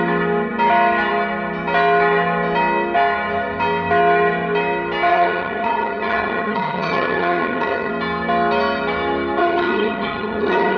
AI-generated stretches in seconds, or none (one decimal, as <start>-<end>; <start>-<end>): 5.1-7.9; 9.4-10.8